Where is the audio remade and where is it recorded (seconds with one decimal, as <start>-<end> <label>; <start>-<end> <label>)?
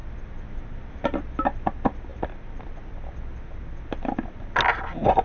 0.0-5.2 recorded